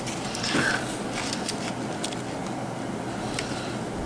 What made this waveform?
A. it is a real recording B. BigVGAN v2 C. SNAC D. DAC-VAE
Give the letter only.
A